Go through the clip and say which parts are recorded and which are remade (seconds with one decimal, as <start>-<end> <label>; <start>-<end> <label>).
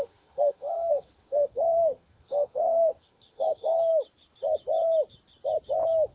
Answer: 0.0-3.9 remade; 3.9-6.1 recorded